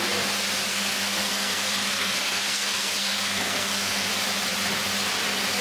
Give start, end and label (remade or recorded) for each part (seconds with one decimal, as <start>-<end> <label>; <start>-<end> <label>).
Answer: 0.0-0.7 recorded; 0.7-4.1 remade; 4.1-5.6 recorded